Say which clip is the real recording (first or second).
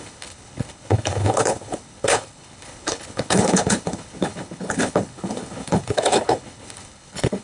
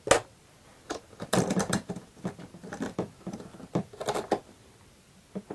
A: second